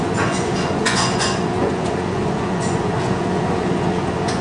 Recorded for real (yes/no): no